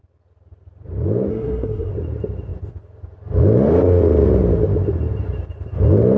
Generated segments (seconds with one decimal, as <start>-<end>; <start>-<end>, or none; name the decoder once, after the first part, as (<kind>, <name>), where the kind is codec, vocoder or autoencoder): 1.3-1.9 (codec, SNAC)